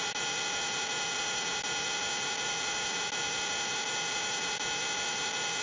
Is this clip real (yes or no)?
yes